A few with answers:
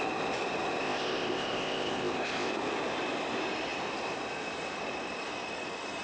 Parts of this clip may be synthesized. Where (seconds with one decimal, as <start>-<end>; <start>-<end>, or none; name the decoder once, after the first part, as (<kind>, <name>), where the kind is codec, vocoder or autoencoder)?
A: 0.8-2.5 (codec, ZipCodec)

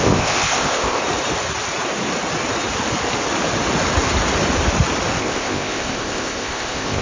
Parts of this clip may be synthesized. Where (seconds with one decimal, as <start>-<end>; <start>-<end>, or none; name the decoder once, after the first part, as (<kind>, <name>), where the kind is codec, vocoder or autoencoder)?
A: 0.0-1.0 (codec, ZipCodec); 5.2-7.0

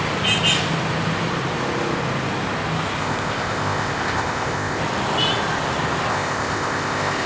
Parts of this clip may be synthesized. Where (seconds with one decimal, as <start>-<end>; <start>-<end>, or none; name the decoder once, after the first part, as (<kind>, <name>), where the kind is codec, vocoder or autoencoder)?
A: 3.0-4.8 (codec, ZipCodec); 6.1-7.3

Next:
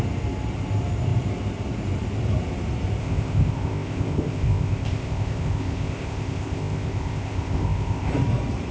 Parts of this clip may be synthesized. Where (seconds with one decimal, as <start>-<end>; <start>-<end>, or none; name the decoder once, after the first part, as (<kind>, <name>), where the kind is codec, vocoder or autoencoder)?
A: 3.0-8.1 (codec, ZipCodec)